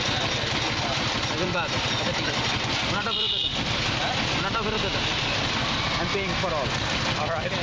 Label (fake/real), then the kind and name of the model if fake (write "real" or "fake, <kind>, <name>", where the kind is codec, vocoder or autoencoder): real